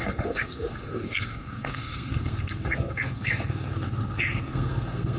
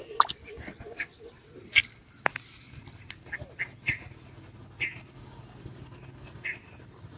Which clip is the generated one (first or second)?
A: first